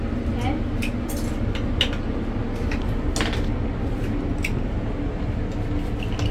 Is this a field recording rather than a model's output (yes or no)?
yes